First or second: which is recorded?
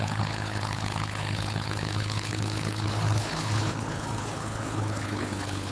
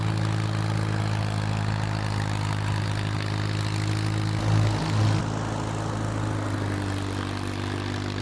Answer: second